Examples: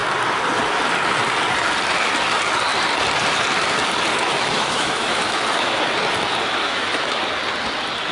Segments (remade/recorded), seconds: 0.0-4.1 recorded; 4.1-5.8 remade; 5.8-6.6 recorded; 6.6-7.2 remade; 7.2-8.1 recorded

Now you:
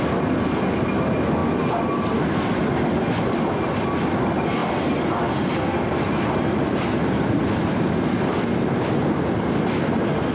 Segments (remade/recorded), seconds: 0.0-4.6 recorded; 4.6-8.8 remade; 8.8-10.3 recorded